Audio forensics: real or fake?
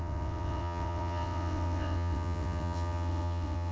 fake